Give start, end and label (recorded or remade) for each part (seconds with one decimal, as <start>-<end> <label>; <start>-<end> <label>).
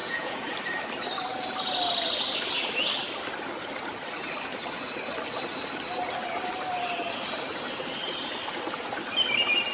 0.0-0.5 remade; 0.5-9.7 recorded